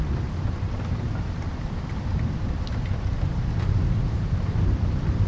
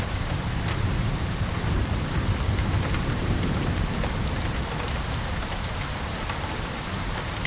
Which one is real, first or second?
first